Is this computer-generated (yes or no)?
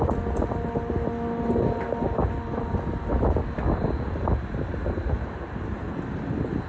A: no